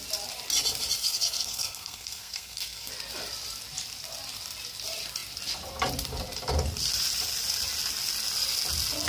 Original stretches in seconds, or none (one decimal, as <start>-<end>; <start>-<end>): 0.0-1.0; 2.9-9.1

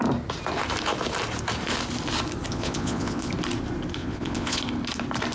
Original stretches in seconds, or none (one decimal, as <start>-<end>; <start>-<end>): 0.0-2.5; 3.3-4.0; 4.6-5.3